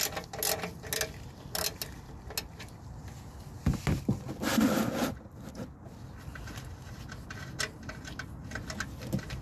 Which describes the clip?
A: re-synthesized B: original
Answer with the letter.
B